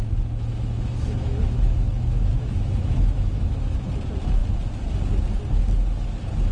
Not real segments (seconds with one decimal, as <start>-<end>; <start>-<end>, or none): 0.5-3.9